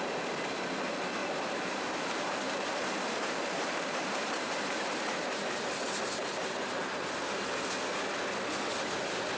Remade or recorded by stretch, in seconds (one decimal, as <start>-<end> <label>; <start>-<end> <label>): 0.0-1.2 recorded; 1.2-5.8 remade; 5.8-9.4 recorded